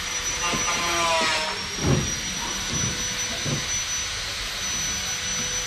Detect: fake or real real